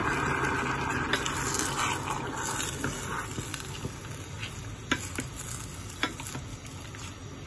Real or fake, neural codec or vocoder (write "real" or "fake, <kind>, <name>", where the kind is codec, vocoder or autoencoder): real